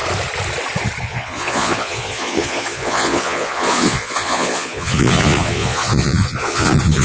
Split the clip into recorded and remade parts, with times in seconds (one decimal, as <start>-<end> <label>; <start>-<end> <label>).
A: 0.0-1.0 recorded; 1.0-7.0 remade